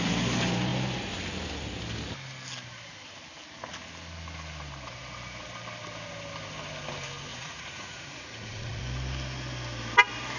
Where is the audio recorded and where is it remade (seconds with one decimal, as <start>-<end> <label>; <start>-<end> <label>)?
0.0-7.3 recorded; 7.3-8.8 remade; 8.8-10.4 recorded